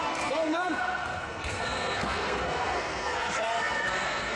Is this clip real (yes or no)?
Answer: no